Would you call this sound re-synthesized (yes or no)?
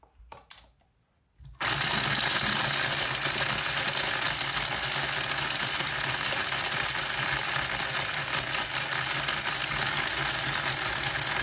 no